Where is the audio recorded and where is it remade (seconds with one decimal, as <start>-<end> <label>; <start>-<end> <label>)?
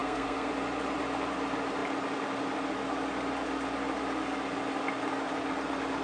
0.0-0.5 remade; 0.5-6.0 recorded